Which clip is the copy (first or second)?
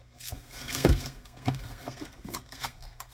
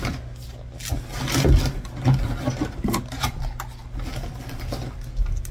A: first